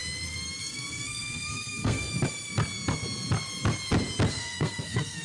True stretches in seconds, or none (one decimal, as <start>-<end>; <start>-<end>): 0.0-0.6; 2.1-4.3